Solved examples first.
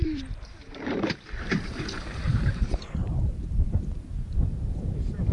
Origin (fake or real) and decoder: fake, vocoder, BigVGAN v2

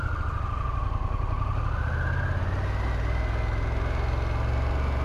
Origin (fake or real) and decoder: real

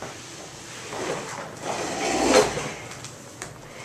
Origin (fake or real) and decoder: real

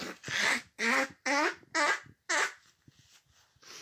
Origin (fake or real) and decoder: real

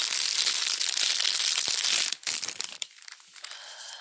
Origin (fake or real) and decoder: real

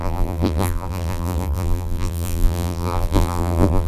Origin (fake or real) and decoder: fake, vocoder, BigVGAN v2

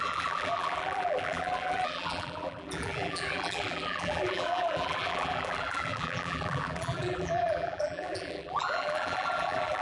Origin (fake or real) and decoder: fake, vocoder, BigVGAN v2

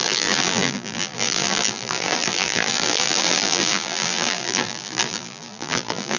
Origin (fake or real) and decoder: fake, vocoder, BigVGAN v2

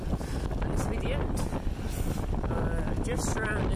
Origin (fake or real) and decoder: real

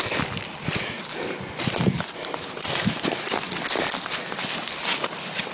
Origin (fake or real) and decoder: real